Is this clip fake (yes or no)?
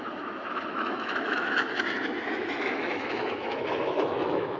yes